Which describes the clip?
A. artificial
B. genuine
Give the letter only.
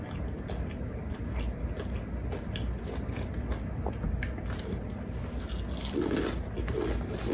B